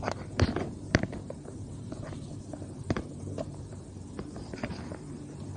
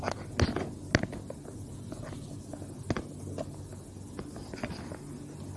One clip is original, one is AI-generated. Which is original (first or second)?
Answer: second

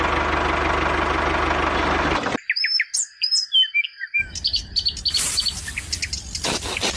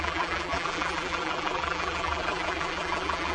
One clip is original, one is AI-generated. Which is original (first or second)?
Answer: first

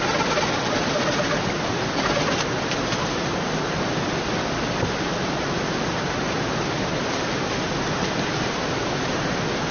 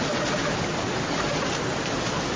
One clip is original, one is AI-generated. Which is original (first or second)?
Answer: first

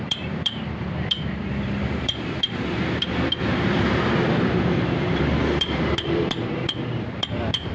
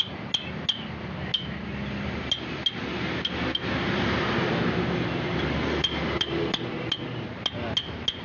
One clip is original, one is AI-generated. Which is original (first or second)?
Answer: second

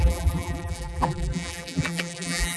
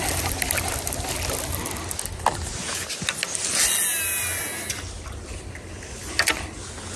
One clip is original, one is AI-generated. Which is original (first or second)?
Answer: second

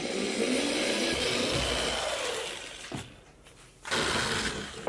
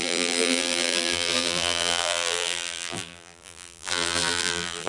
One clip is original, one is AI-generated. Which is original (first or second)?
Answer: first